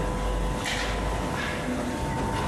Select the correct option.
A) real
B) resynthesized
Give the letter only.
A